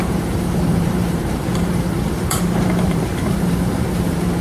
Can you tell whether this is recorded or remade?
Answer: remade